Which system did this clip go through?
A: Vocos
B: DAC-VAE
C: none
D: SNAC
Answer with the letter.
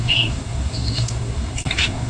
D